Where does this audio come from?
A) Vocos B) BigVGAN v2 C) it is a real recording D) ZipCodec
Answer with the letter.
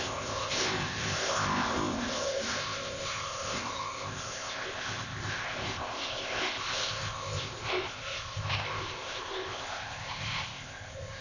D